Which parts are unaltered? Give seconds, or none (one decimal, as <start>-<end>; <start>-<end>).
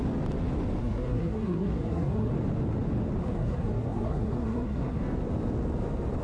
0.0-0.8; 2.3-3.2; 5.0-6.2